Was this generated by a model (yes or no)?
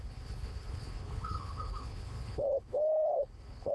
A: yes